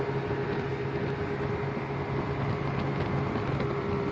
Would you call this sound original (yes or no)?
yes